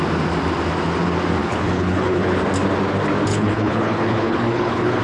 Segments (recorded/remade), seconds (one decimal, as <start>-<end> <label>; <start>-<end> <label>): 0.0-1.4 recorded; 1.4-2.4 remade; 2.4-3.3 recorded; 3.3-5.0 remade